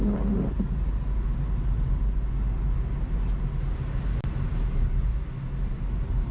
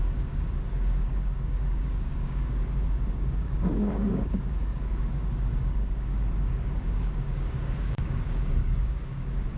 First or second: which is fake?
second